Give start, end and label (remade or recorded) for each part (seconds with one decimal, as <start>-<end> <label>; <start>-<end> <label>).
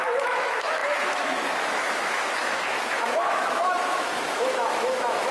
0.0-5.3 remade